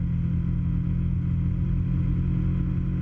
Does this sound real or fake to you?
real